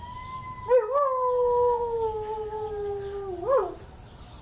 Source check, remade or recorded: recorded